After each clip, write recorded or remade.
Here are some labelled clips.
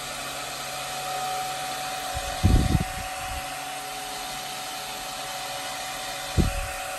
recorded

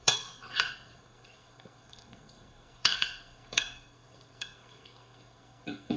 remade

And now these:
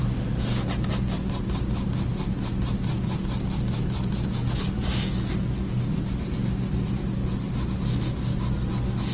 recorded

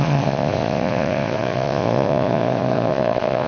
remade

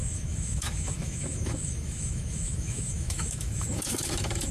remade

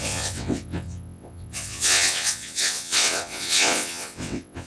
remade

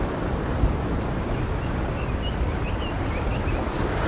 recorded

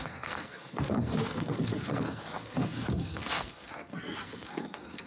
remade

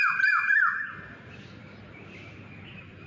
recorded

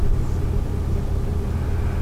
recorded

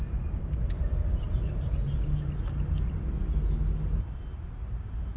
recorded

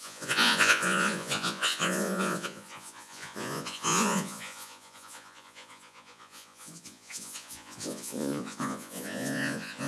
remade